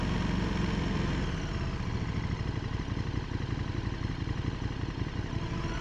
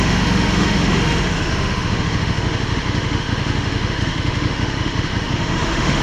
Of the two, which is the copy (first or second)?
second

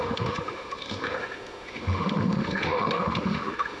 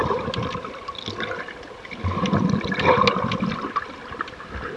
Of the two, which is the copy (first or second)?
first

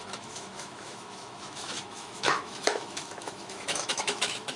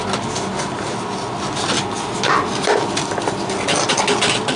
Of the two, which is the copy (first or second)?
first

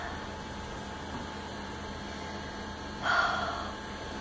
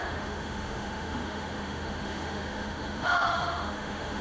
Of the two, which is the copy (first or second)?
second